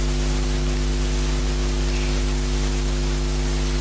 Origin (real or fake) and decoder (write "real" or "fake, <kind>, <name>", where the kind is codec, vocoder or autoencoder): real